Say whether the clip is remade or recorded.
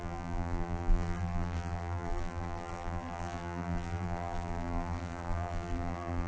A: remade